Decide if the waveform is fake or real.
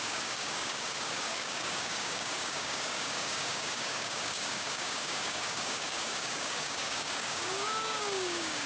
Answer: fake